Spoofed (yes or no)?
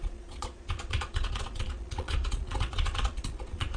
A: yes